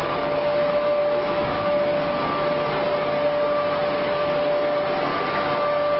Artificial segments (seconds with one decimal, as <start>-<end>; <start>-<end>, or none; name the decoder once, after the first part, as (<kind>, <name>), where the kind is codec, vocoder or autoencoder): 0.0-2.0 (autoencoder, DAC-VAE); 5.1-6.0